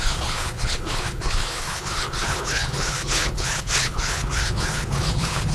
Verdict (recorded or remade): remade